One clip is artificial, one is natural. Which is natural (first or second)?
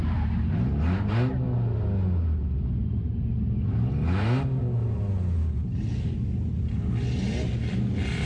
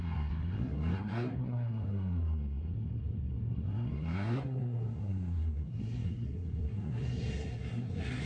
first